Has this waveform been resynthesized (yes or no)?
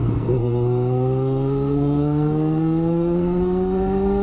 yes